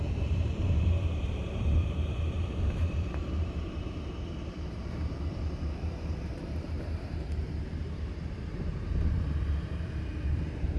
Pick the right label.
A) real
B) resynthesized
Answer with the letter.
B